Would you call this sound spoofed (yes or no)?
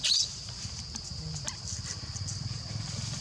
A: yes